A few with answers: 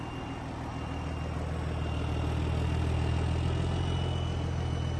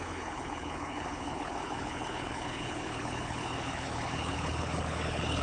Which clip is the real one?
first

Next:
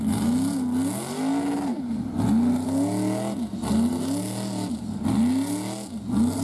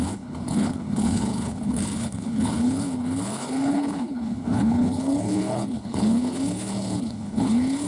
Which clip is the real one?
first